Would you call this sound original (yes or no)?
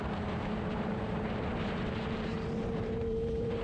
no